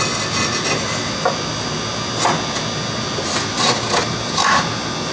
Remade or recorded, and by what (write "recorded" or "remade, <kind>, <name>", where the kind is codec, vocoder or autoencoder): recorded